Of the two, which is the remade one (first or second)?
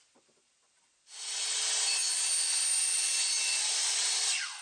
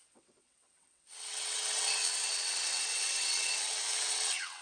second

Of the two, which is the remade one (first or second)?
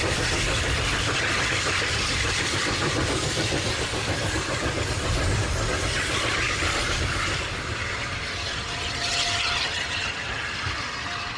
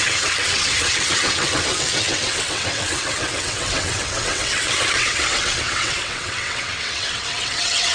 second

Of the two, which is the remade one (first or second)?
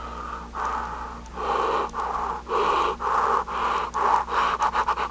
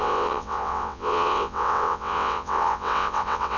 second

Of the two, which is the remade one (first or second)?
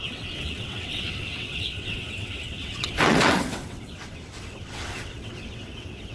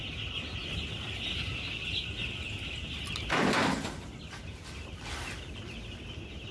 first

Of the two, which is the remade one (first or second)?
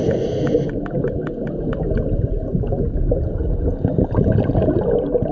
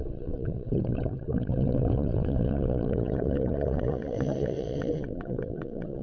second